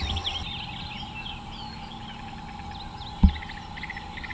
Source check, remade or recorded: recorded